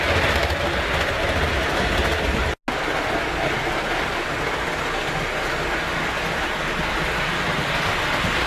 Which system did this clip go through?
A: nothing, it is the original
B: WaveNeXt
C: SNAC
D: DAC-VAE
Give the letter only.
A